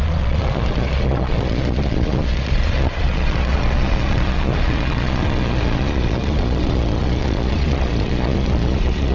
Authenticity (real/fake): fake